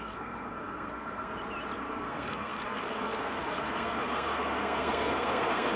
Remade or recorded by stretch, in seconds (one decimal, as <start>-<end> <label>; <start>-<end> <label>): 0.0-1.3 remade; 1.3-1.8 recorded; 1.8-5.8 remade